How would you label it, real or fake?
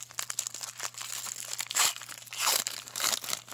real